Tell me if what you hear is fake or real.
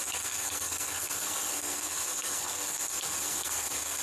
fake